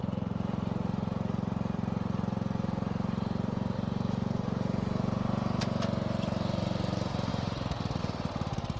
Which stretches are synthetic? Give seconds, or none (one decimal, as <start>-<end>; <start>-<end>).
0.0-8.8